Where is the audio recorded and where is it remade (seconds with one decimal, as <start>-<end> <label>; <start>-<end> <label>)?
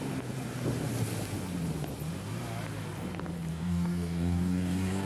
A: 0.0-3.5 recorded; 3.5-5.1 remade